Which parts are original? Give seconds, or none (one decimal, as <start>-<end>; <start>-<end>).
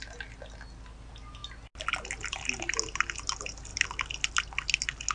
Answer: 0.0-5.1